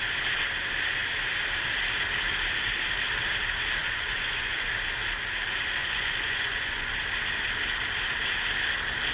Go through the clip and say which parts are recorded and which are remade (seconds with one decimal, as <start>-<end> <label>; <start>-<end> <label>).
0.0-3.8 recorded; 3.8-4.7 remade; 4.7-5.8 recorded; 5.8-6.9 remade; 6.9-9.1 recorded